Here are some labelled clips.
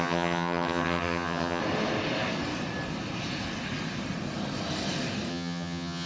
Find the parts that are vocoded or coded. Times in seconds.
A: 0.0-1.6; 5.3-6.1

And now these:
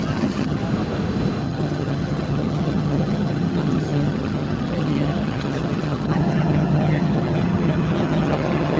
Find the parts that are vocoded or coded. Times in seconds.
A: 0.0-0.6; 1.4-8.8

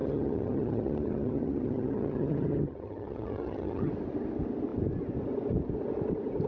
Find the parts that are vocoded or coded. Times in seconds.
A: 0.0-3.9

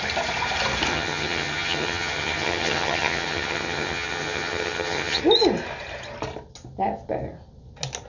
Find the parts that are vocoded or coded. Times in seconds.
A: 0.9-5.2